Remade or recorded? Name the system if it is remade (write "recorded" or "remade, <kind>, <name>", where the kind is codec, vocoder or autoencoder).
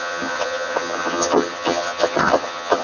remade, vocoder, HiFi-GAN